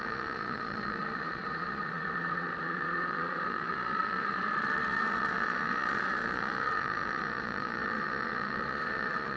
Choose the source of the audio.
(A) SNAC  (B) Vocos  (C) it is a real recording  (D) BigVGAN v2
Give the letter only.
B